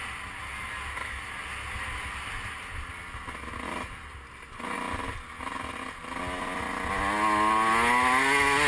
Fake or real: real